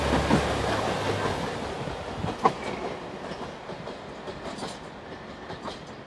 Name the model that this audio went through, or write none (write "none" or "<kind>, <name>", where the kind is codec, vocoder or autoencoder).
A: none